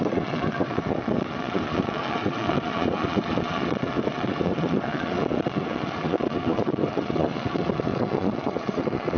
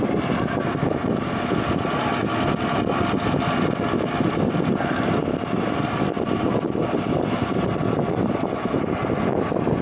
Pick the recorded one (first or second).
second